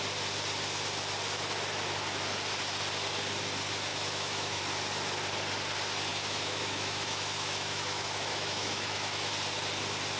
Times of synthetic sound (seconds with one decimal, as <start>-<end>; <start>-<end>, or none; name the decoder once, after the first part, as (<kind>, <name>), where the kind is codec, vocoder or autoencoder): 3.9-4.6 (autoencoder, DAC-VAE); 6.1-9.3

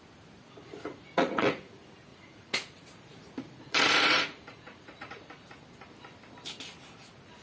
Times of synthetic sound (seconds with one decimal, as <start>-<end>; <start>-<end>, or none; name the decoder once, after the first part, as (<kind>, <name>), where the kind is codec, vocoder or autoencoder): 0.6-1.6 (vocoder, Vocos); 2.1-5.3

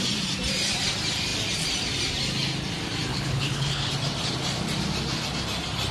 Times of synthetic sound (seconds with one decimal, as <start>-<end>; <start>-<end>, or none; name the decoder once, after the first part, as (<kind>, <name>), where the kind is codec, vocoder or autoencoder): 3.1-3.9 (codec, HILCodec)

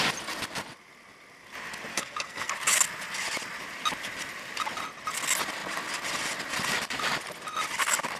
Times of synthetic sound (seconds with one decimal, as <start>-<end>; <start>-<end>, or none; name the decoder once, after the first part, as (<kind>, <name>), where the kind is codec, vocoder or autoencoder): 1.9-2.5 (codec, SNAC)

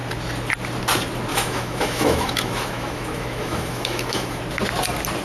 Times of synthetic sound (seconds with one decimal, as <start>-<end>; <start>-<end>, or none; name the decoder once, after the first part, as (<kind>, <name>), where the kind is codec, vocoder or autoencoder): 1.3-4.4 (autoencoder, DAC-VAE)